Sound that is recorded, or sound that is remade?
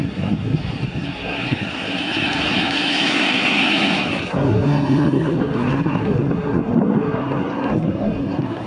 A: remade